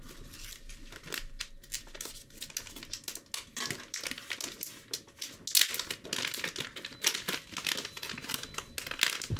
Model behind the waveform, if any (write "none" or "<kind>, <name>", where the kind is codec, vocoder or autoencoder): none